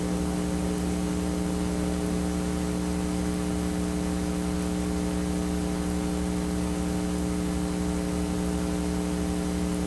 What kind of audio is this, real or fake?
real